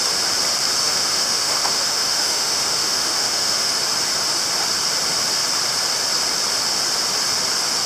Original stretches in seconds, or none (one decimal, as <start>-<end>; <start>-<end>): 0.0-0.8; 3.7-7.9